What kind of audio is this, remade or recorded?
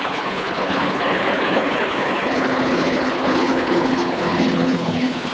remade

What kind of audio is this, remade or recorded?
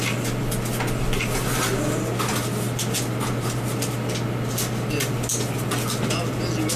recorded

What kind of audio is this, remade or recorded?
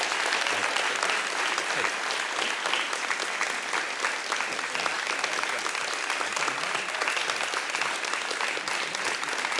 recorded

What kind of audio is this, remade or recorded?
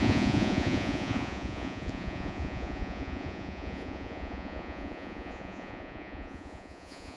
remade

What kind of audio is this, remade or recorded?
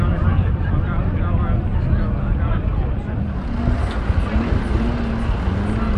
recorded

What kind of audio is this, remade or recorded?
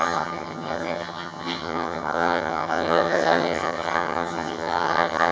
remade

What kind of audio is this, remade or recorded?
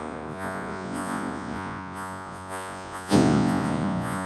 remade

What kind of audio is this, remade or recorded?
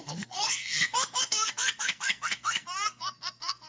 remade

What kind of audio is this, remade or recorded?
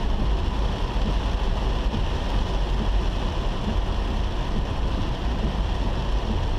recorded